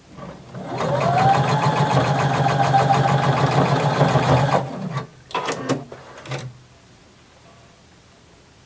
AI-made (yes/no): no